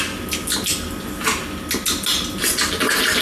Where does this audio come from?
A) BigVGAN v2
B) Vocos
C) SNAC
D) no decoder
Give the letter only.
D